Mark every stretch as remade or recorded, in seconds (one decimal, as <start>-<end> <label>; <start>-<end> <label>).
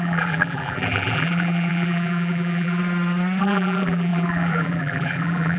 0.0-2.8 remade; 2.8-3.4 recorded; 3.4-5.6 remade